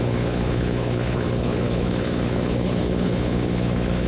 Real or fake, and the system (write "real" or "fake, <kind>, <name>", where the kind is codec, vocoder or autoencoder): fake, codec, HILCodec